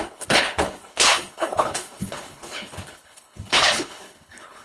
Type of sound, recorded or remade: remade